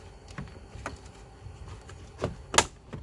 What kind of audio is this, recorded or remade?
recorded